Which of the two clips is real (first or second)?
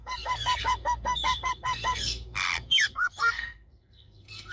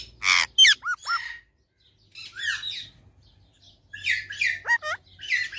second